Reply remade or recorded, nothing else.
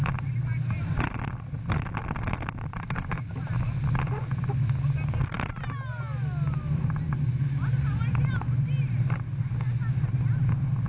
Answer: recorded